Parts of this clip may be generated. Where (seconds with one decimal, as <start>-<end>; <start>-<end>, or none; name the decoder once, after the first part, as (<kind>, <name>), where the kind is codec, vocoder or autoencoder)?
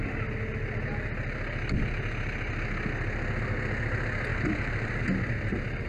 4.3-5.0 (vocoder, BigVGAN v2)